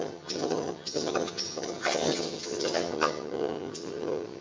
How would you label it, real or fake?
fake